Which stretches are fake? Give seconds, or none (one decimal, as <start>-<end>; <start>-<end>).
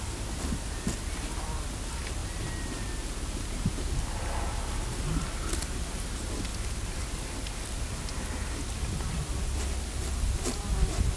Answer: none